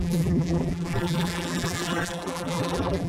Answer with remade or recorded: remade